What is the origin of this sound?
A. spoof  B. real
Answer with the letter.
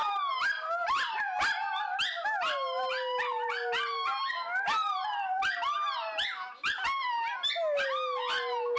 B